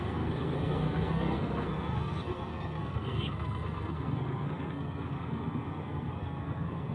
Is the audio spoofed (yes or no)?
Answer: yes